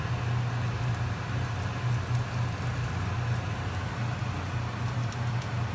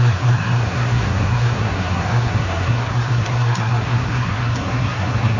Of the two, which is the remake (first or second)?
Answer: second